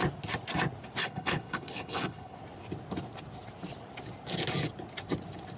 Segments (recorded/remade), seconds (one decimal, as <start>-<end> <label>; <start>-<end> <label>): 0.0-1.0 recorded; 1.0-2.4 remade; 2.4-5.6 recorded